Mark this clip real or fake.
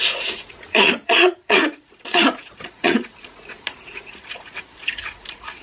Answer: fake